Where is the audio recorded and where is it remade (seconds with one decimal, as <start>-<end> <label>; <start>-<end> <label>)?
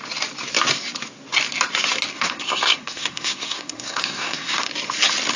0.0-2.1 recorded; 2.1-4.7 remade; 4.7-5.4 recorded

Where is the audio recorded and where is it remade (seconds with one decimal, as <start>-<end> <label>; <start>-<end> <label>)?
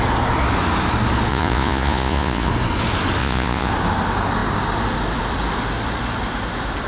0.0-1.3 recorded; 1.3-2.5 remade; 2.5-3.2 recorded; 3.2-3.7 remade; 3.7-6.9 recorded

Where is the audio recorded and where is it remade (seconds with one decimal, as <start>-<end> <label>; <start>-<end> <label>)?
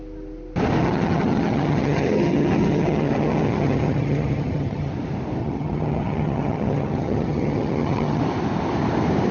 0.0-0.8 recorded; 0.8-4.9 remade; 4.9-5.4 recorded; 5.4-8.2 remade; 8.2-9.3 recorded